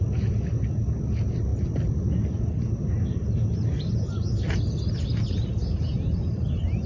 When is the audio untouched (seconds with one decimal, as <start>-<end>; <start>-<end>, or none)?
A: 0.0-6.9